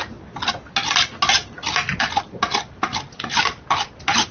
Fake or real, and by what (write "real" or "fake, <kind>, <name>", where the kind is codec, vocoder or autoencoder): real